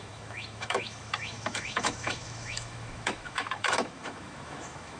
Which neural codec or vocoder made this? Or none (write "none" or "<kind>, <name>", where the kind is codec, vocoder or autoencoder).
autoencoder, DAC-VAE